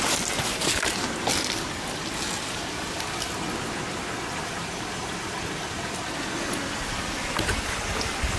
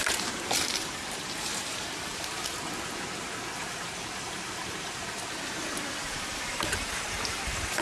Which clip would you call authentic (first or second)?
first